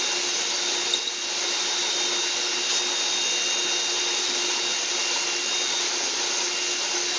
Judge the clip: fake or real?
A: real